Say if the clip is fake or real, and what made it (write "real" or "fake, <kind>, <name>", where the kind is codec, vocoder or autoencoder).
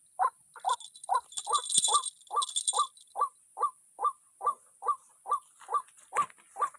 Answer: real